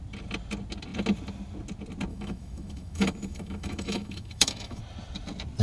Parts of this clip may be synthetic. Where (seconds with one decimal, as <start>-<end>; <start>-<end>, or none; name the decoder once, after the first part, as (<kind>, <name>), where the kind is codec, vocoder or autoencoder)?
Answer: 2.1-4.8 (autoencoder, DAC-VAE)

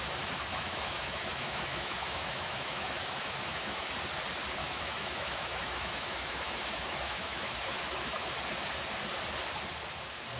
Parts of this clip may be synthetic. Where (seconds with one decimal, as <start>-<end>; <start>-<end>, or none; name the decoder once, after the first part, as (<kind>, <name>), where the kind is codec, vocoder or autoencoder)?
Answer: 0.5-3.9 (autoencoder, DAC-VAE); 4.6-8.3